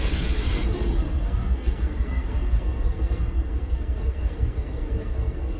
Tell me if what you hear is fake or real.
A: fake